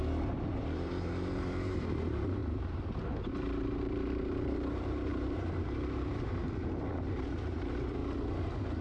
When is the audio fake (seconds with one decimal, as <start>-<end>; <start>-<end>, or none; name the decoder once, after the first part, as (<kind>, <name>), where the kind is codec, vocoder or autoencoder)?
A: 0.0-2.4 (vocoder, BigVGAN v2); 3.3-6.4; 7.1-8.0